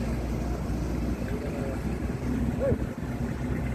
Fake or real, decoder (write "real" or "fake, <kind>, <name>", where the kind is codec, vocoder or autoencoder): real